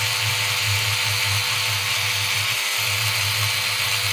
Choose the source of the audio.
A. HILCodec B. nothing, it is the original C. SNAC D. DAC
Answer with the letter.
B